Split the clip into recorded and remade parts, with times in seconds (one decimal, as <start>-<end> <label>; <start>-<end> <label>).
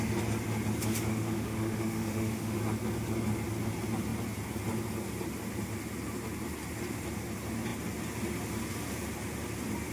0.0-1.1 recorded; 1.1-2.6 remade; 2.6-9.9 recorded